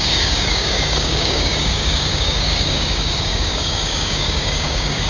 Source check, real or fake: fake